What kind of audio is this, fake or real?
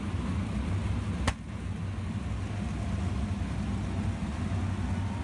real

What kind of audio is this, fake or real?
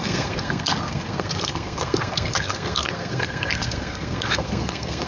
fake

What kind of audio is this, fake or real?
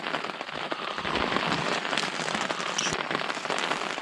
real